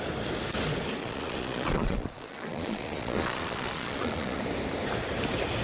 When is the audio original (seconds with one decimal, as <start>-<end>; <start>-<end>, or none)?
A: 0.0-1.0; 4.4-5.6